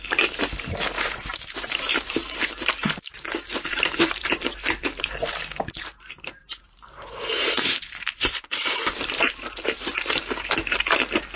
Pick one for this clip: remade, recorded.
remade